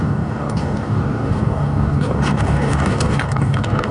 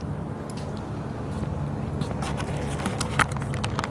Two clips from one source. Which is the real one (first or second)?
second